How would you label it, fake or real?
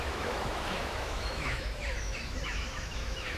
fake